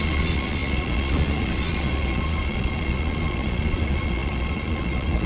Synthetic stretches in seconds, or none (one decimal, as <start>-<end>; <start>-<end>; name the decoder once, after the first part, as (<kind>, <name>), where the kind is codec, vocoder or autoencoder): 0.0-5.3 (vocoder, Vocos)